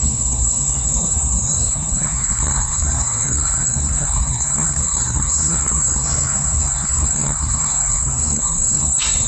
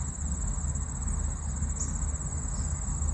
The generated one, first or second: first